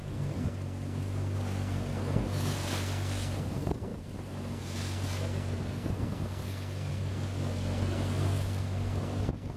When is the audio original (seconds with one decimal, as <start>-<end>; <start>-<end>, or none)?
none